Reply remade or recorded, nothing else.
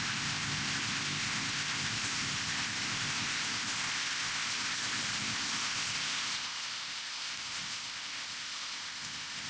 remade